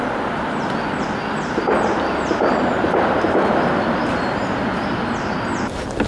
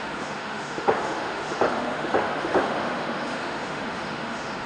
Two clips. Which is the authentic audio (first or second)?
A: first